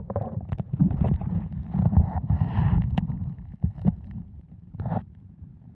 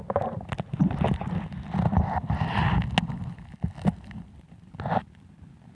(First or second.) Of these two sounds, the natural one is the second